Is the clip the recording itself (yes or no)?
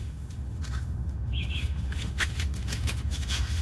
no